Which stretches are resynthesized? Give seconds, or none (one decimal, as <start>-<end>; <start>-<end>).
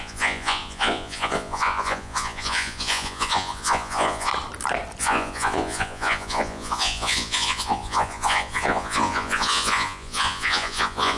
0.0-4.3; 5.0-11.2